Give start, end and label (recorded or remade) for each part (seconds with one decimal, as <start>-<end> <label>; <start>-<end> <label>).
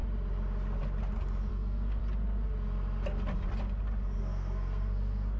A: 0.0-1.5 recorded; 1.5-2.0 remade; 2.0-4.2 recorded; 4.2-5.4 remade